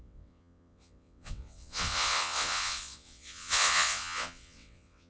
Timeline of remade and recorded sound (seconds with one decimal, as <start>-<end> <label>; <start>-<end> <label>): 0.0-5.1 remade